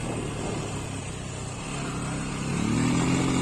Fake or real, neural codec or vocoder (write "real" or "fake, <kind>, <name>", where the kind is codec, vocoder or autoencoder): real